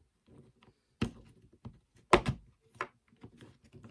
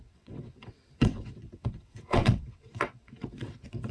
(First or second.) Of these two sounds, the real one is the first